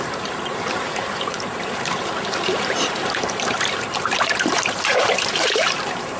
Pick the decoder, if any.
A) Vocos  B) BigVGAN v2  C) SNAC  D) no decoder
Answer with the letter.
B